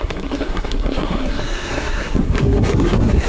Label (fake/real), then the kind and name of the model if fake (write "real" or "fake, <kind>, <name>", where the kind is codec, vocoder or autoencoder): fake, codec, SNAC